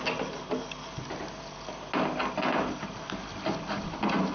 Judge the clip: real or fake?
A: real